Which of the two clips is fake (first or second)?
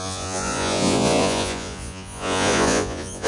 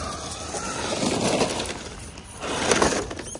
first